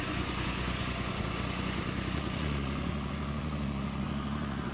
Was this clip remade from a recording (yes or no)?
yes